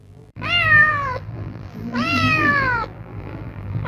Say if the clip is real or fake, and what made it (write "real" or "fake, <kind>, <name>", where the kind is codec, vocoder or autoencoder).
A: fake, vocoder, BigVGAN v2